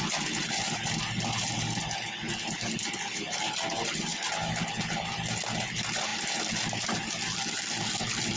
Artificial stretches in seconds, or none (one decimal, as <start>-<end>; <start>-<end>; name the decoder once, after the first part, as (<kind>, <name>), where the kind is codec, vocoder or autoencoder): none

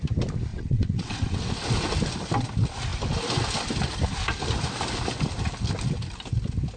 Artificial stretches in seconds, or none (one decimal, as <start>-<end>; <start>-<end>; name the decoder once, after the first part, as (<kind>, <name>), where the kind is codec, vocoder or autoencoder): 0.5-1.5 (vocoder, WaveNeXt)

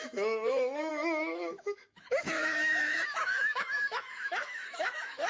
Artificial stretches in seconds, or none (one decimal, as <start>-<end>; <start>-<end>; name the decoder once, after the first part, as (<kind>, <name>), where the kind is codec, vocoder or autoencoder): 0.0-5.3 (autoencoder, DAC-VAE)